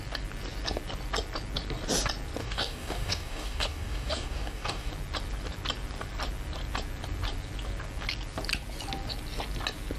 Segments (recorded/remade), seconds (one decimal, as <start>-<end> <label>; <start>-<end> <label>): 0.0-2.4 recorded; 2.4-4.9 remade; 4.9-10.0 recorded